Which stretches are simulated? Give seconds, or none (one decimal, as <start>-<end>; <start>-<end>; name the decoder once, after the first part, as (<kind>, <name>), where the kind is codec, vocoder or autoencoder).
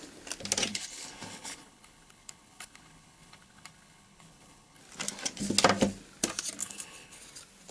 0.7-4.8 (codec, HILCodec); 6.6-7.2